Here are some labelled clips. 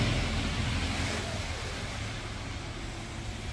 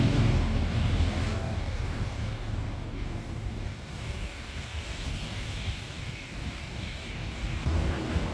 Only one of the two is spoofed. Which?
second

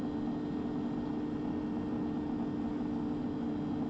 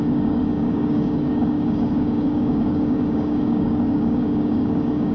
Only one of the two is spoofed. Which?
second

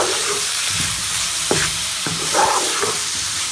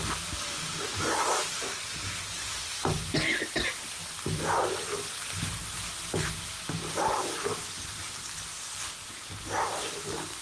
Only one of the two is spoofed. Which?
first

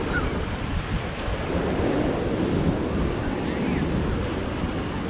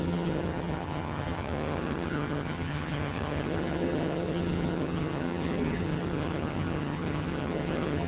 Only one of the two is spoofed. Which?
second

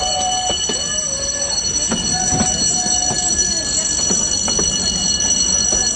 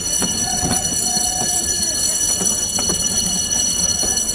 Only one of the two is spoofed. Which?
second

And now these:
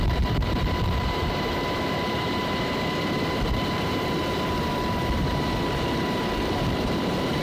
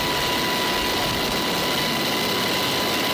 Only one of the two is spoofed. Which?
first